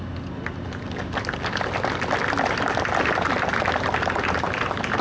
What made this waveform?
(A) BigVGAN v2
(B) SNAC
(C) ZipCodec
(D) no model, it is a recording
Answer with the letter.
D